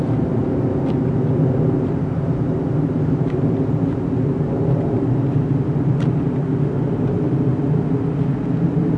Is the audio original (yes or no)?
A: yes